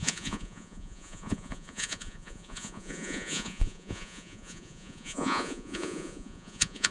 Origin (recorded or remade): remade